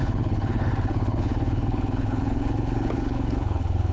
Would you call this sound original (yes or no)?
no